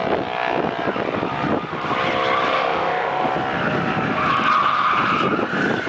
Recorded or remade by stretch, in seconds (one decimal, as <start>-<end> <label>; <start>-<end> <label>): 0.0-2.5 recorded; 2.5-3.3 remade; 3.3-5.9 recorded